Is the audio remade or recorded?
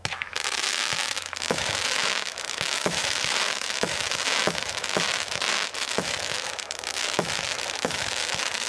remade